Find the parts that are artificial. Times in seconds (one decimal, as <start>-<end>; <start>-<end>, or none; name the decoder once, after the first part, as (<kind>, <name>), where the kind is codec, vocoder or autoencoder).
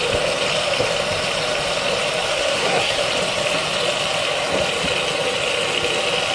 2.3-3.0 (codec, SNAC)